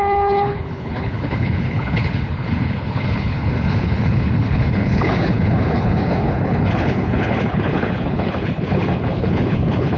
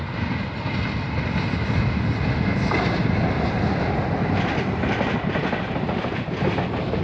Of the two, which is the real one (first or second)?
second